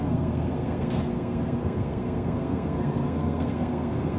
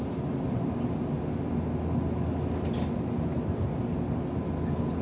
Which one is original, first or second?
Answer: second